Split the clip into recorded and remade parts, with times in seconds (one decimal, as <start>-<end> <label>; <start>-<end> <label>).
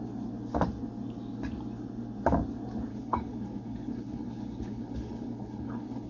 0.0-2.9 recorded; 2.9-6.1 remade